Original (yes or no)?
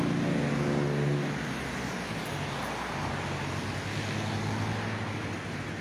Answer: yes